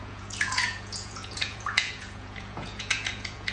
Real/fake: fake